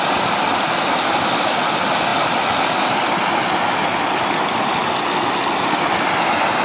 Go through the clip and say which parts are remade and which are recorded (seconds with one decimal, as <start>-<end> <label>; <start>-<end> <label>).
0.0-6.6 recorded